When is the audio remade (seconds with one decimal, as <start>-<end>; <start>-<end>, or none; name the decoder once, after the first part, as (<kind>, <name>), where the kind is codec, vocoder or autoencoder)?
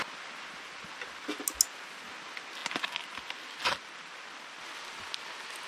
none